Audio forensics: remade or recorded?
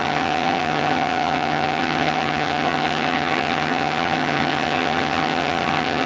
remade